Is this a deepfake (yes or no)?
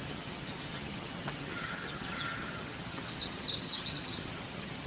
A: yes